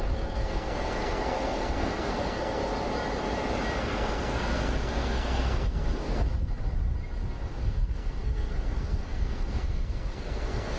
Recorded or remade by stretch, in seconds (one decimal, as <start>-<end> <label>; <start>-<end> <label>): 0.0-2.6 remade; 2.6-3.8 recorded; 3.8-6.6 remade; 6.6-7.6 recorded; 7.6-10.8 remade